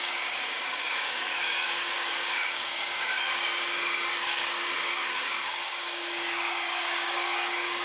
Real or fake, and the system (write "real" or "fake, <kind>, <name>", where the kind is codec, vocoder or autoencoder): fake, codec, DAC